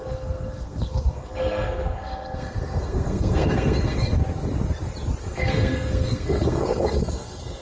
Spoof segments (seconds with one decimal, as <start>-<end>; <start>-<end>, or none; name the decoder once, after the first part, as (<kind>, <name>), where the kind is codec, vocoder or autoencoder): 0.0-4.2 (codec, SNAC); 5.2-7.6